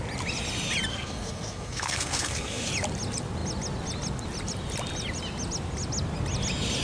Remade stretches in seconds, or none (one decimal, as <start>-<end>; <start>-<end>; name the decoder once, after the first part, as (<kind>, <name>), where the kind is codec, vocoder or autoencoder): 0.9-2.7 (codec, SNAC)